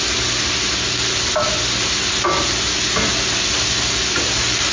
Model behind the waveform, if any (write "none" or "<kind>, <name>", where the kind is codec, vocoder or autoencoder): none